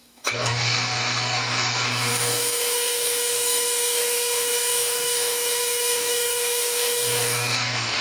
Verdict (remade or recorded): remade